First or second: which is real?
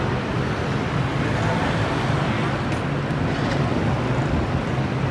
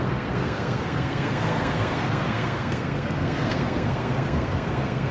first